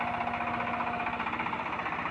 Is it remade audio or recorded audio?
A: recorded